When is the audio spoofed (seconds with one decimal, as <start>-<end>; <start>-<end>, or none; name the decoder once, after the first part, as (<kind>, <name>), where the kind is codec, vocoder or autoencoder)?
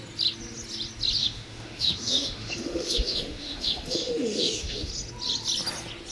1.2-4.9 (autoencoder, DAC-VAE)